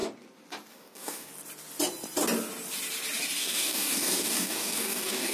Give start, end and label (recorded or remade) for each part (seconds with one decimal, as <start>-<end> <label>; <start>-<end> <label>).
0.0-0.7 recorded; 0.7-1.3 remade; 1.3-3.4 recorded; 3.4-5.3 remade